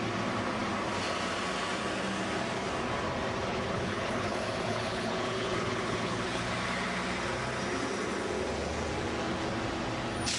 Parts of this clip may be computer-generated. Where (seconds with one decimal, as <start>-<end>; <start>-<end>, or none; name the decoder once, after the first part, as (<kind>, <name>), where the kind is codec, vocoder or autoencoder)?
3.5-6.5 (codec, HILCodec)